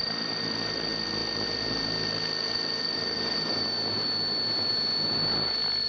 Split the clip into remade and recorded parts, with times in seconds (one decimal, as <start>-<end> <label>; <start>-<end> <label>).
0.0-5.9 recorded